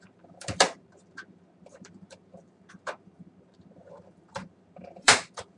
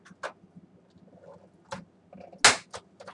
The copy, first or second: first